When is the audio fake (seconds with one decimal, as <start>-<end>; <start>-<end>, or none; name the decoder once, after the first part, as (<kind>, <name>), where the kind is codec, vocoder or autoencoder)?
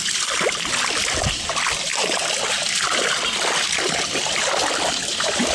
none